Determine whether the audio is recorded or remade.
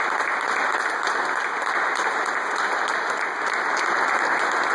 recorded